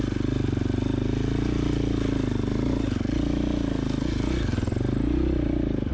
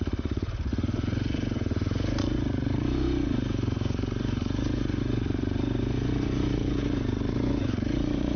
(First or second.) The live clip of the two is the first